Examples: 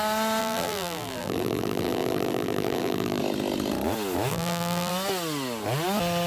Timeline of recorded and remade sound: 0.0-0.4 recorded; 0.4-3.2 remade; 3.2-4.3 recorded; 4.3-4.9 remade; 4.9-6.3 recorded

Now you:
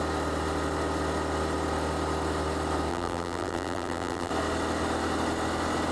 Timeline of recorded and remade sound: 0.0-2.9 recorded; 2.9-4.3 remade; 4.3-5.9 recorded

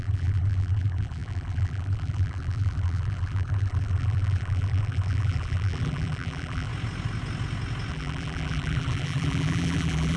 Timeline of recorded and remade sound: 0.0-6.7 remade; 6.7-7.9 recorded; 7.9-10.2 remade

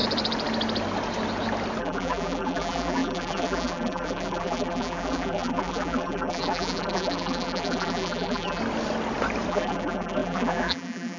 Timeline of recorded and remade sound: 0.0-1.8 recorded; 1.8-8.6 remade; 8.6-9.5 recorded; 9.5-11.2 remade